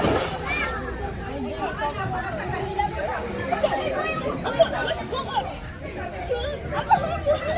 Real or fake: real